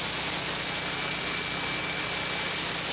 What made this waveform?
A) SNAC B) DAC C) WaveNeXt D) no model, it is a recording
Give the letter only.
D